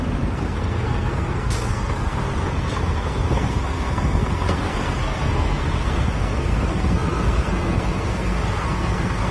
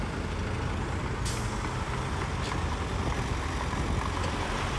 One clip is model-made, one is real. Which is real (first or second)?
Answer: second